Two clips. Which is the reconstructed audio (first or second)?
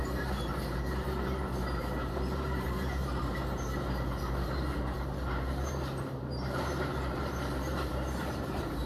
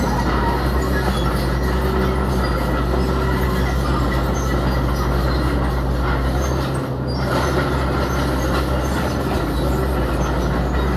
first